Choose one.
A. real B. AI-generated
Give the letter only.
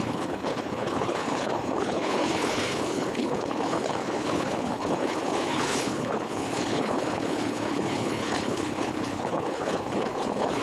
B